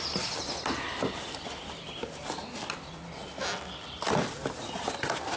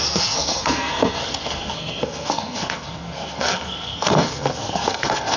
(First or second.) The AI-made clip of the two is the second